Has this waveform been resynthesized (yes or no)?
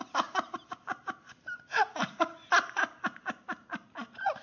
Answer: no